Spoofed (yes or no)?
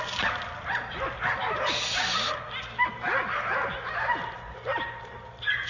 no